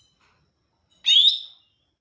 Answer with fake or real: real